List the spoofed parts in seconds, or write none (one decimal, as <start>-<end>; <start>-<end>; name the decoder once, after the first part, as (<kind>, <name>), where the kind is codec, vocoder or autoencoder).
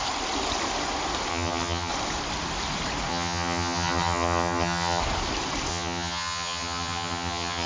1.3-1.9 (vocoder, HiFi-GAN); 3.1-5.0; 5.7-7.7